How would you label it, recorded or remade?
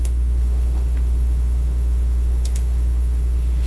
remade